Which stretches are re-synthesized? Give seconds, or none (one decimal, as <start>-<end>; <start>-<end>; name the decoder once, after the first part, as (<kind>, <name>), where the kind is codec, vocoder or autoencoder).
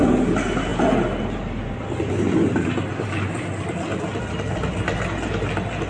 none